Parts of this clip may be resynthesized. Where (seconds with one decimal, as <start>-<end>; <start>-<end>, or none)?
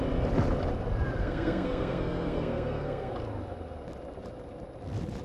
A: 1.2-3.1